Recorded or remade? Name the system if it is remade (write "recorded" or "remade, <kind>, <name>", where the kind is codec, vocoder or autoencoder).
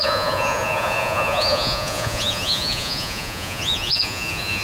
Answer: remade, vocoder, Vocos